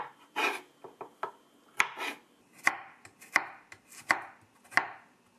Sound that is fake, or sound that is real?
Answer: real